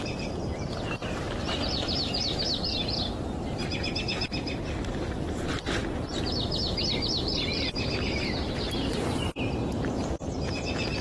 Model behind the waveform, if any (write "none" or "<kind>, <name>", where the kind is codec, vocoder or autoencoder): vocoder, BigVGAN v2